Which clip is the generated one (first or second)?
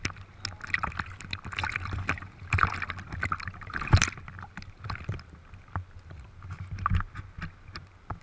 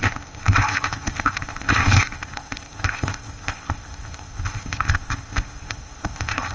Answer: second